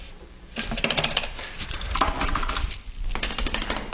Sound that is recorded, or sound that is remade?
recorded